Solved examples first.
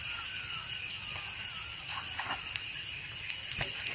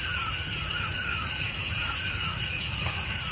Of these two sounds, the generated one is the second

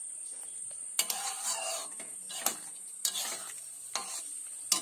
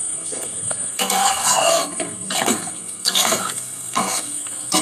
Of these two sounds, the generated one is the second